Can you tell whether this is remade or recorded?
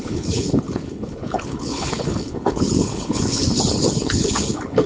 remade